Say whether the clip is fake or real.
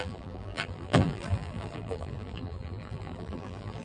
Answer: fake